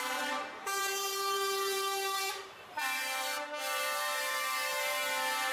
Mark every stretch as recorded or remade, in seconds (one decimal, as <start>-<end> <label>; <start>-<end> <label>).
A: 0.0-5.5 remade

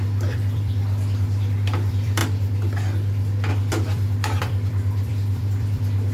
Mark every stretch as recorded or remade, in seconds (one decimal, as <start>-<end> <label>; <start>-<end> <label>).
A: 0.0-2.2 remade; 2.2-3.5 recorded; 3.5-6.1 remade

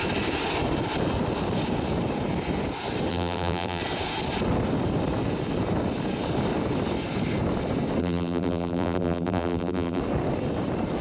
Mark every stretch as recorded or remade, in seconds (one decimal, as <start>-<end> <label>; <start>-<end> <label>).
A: 0.0-3.1 recorded; 3.1-3.8 remade; 3.8-8.0 recorded; 8.0-10.0 remade; 10.0-11.0 recorded

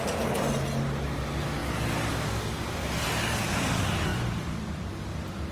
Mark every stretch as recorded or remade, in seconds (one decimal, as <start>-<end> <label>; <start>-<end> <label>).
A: 0.0-4.1 recorded; 4.1-4.8 remade; 4.8-5.5 recorded

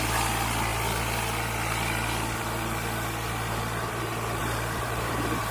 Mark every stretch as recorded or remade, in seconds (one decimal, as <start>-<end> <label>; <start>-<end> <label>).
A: 0.0-4.4 recorded; 4.4-5.5 remade